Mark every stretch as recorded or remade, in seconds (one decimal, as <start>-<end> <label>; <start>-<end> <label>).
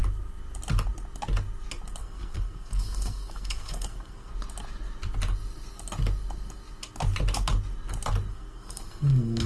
0.0-2.0 recorded; 2.0-4.3 remade; 4.3-8.3 recorded; 8.3-9.5 remade